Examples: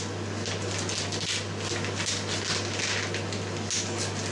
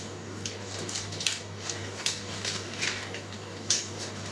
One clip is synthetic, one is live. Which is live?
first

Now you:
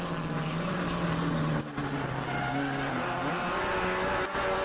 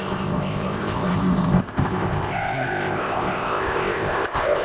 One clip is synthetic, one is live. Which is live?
first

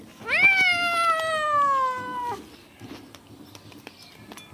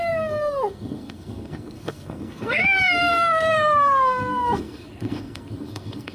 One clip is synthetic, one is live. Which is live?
first